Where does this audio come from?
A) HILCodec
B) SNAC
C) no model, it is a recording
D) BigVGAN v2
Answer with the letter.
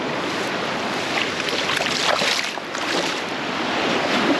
C